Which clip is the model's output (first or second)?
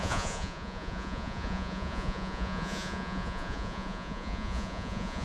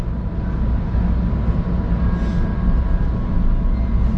first